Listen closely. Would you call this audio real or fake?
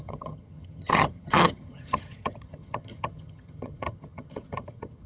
fake